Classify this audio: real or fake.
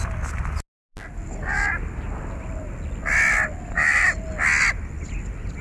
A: real